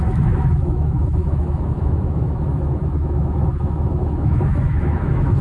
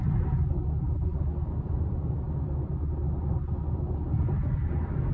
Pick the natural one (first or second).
second